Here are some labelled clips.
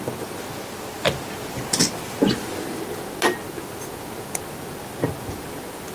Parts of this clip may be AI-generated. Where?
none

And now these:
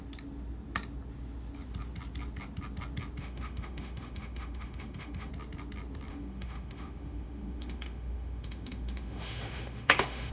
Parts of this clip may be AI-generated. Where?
3.2-5.3; 6.1-10.3

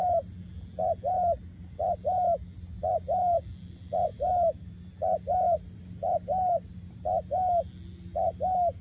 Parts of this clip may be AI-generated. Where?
4.1-4.7

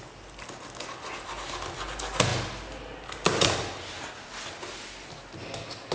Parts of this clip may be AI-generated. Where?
none

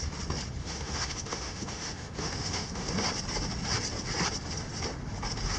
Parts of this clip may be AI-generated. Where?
0.6-2.9